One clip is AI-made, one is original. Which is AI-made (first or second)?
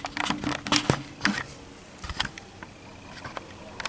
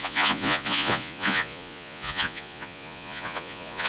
second